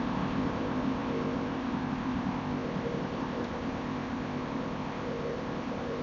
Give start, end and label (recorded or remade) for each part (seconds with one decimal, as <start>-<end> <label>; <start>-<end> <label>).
0.0-6.0 remade